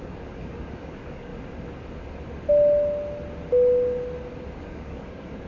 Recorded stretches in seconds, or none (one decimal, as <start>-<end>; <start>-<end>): 1.3-4.6